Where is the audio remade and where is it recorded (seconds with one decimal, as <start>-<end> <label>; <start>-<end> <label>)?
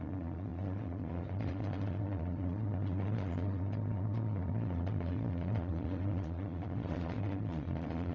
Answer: 0.0-8.1 remade